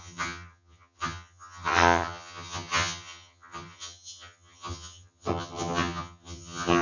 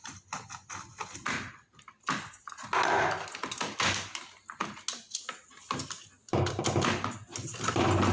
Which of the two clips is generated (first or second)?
first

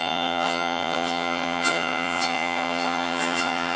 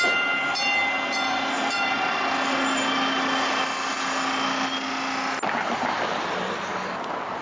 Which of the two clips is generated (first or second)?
first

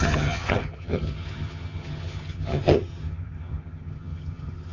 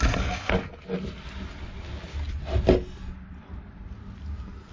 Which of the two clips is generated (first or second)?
first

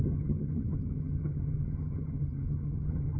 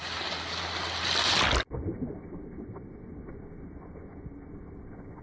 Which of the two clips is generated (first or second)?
first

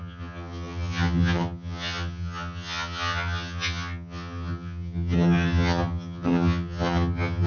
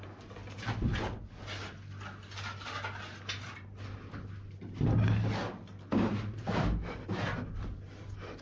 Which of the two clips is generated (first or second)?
first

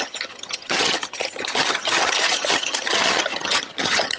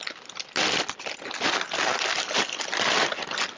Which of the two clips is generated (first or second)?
first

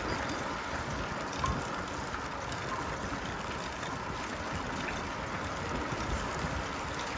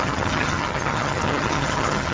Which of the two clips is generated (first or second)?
second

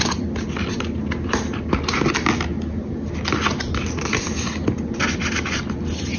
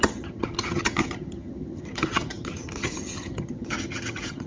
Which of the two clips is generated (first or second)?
second